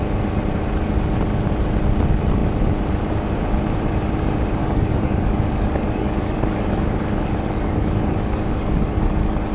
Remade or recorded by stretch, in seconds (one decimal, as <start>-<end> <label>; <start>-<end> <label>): 0.0-4.6 recorded; 4.6-9.5 remade